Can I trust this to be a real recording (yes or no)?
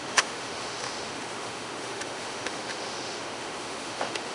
no